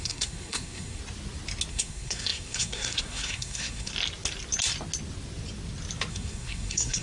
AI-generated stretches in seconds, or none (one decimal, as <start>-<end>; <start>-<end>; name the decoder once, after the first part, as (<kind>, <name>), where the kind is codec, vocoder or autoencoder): 0.0-1.0 (codec, SNAC); 1.7-3.9; 6.1-7.0